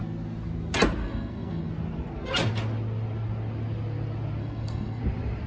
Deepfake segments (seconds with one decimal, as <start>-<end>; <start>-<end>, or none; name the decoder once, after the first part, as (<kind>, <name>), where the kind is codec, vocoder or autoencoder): 1.0-1.7 (codec, SNAC); 4.4-5.0